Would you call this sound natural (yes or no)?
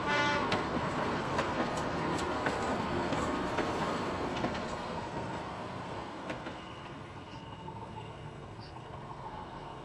no